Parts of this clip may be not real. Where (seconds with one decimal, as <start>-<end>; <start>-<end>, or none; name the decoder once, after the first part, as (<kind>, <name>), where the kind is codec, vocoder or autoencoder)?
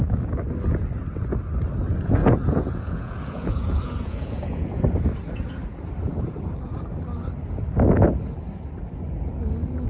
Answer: 2.2-4.8 (vocoder, Vocos)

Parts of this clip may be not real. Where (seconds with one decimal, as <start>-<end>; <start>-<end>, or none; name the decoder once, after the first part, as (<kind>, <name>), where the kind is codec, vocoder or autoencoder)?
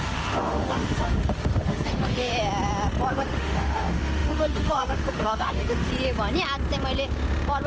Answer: 0.0-2.3 (autoencoder, DAC-VAE); 3.1-5.9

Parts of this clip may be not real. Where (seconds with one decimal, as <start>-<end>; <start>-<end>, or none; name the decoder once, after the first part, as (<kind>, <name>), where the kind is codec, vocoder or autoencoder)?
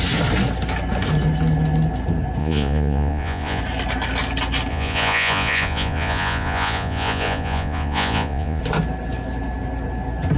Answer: 2.4-3.6 (vocoder, Vocos); 4.7-8.6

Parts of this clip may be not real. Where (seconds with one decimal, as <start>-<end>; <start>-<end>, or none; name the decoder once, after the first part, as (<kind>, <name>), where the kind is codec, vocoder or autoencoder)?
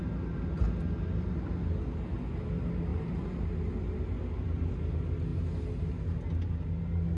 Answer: 2.9-3.5 (vocoder, BigVGAN v2)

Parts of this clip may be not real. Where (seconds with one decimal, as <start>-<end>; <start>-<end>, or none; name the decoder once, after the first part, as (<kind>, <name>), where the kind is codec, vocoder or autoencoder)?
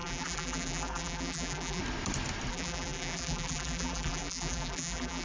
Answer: 0.0-1.8 (vocoder, BigVGAN v2); 2.5-5.2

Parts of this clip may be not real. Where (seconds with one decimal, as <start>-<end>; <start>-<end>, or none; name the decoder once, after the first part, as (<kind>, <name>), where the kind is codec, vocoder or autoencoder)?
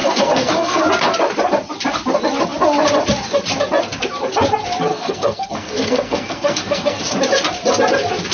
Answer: 0.0-0.8 (codec, SNAC); 4.9-7.0